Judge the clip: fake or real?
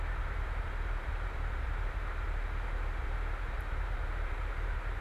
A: fake